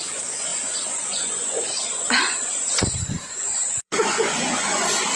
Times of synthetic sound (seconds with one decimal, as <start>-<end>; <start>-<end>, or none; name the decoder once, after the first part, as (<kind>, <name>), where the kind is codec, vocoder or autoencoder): 0.0-5.2 (vocoder, Vocos)